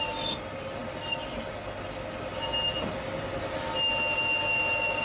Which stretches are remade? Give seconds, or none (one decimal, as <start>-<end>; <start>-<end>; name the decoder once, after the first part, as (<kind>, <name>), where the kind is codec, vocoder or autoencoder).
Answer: none